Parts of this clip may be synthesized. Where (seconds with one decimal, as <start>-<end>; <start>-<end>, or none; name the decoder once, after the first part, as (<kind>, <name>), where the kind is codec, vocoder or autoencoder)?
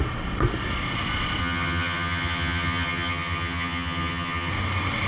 1.4-4.5 (vocoder, HiFi-GAN)